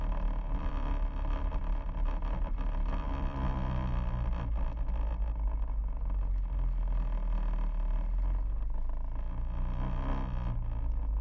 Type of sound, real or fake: real